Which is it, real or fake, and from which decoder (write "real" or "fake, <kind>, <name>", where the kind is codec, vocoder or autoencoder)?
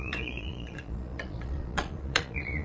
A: fake, vocoder, Vocos